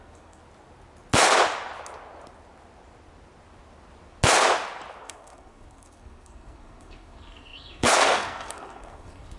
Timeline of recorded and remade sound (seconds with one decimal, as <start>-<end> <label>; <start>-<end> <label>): 0.0-0.4 remade; 0.4-5.0 recorded; 5.0-9.4 remade